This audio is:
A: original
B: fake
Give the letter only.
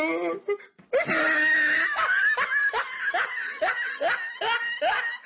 A